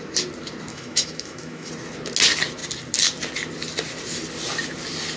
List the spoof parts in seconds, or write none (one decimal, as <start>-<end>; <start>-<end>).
0.7-1.7